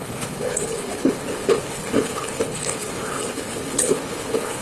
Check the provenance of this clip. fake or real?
fake